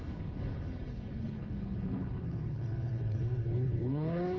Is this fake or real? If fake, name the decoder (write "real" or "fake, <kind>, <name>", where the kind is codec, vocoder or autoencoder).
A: fake, codec, HILCodec